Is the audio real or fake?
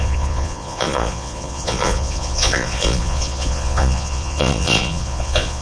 fake